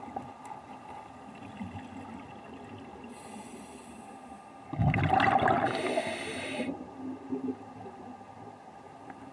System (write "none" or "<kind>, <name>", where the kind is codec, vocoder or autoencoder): none